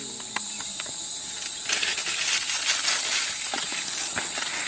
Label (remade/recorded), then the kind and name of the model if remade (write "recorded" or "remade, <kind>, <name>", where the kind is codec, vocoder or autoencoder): recorded